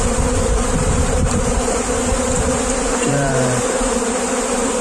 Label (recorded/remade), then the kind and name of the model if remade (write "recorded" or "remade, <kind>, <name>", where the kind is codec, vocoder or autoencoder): remade, vocoder, BigVGAN v2